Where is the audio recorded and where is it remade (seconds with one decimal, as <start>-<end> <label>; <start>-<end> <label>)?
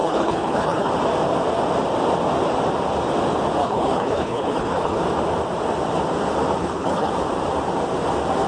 0.0-0.9 remade; 0.9-3.6 recorded; 3.6-5.0 remade; 5.0-6.6 recorded; 6.6-7.1 remade; 7.1-8.5 recorded